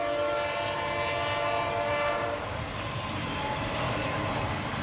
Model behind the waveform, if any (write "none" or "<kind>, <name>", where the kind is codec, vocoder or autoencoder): none